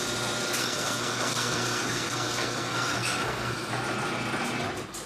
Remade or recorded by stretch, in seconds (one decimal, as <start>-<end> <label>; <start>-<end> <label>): 0.0-0.6 recorded; 0.6-3.7 remade; 3.7-5.1 recorded

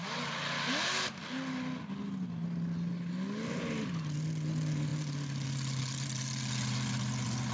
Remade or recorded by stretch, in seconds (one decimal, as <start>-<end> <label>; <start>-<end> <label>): 0.0-7.5 recorded

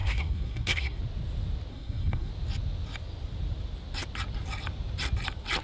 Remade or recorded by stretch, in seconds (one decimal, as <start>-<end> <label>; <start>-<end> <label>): 0.0-1.0 remade; 1.0-1.7 recorded; 1.7-2.3 remade; 2.3-5.6 recorded

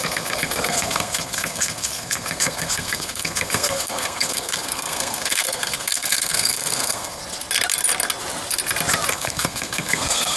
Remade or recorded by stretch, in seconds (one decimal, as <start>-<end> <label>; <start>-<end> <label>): 0.0-7.2 remade; 7.2-9.1 recorded; 9.1-10.4 remade

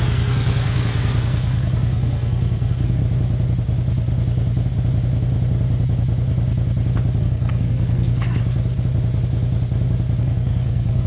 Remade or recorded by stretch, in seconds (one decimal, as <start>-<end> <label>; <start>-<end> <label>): 0.0-3.0 remade; 3.0-7.2 recorded; 7.2-8.4 remade; 8.4-10.2 recorded; 10.2-11.1 remade

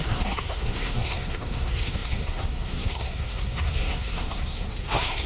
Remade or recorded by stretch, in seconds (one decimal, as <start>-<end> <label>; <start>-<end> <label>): 0.0-5.3 remade

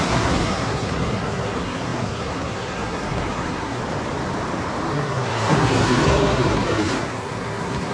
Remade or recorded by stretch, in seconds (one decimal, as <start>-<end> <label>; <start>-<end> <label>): 0.0-3.8 remade; 3.8-4.9 recorded; 4.9-7.9 remade

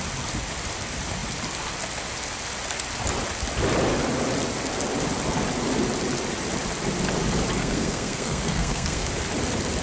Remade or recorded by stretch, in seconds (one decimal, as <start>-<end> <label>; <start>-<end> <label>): 0.0-7.6 recorded; 7.6-9.1 remade; 9.1-9.8 recorded